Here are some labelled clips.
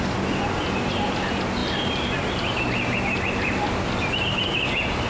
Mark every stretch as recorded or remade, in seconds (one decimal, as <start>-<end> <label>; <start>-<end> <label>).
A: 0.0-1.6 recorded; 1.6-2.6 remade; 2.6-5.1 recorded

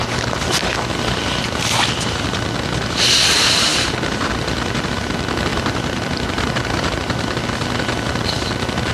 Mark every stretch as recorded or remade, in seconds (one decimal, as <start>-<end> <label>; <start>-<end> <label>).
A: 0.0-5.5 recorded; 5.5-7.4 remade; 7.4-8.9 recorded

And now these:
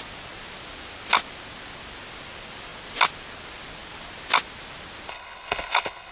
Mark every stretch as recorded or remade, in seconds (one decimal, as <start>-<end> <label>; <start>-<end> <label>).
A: 0.0-5.1 recorded; 5.1-6.1 remade

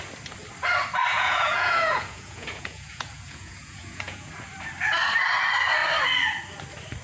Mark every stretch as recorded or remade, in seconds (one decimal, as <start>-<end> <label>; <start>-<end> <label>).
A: 0.0-1.1 recorded; 1.1-4.3 remade; 4.3-7.0 recorded

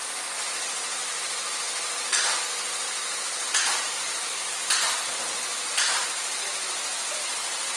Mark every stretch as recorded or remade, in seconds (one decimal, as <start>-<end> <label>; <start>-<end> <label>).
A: 0.0-7.8 recorded